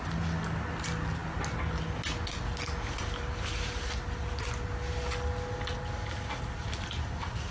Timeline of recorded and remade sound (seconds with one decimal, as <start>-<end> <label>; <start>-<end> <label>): 0.0-7.5 recorded